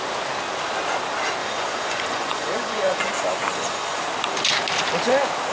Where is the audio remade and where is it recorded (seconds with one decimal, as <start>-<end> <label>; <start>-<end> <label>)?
0.0-1.4 recorded; 1.4-3.1 remade; 3.1-3.5 recorded; 3.5-4.0 remade; 4.0-5.5 recorded